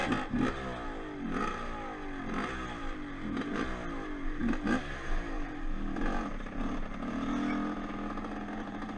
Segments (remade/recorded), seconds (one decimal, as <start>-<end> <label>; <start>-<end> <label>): 0.0-9.0 recorded